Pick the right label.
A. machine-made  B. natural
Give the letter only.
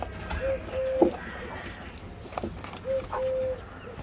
B